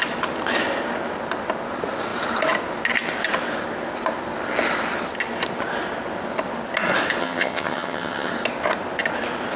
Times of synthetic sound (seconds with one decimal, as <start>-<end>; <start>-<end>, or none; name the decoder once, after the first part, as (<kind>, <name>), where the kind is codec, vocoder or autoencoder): 7.2-8.3 (vocoder, HiFi-GAN)